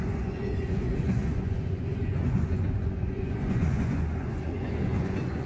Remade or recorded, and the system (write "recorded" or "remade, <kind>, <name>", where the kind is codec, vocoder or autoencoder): remade, vocoder, Vocos